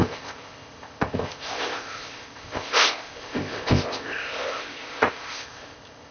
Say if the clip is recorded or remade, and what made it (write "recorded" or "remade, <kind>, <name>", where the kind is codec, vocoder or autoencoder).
remade, codec, ZipCodec